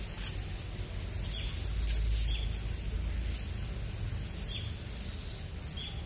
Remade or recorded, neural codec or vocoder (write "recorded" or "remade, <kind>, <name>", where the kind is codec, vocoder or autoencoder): recorded